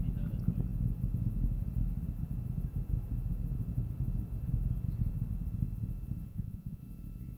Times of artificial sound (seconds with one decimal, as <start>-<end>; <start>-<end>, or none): 6.3-6.8